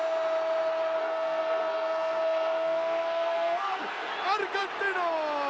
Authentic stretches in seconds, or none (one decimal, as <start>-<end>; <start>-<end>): 0.0-1.0; 4.1-5.5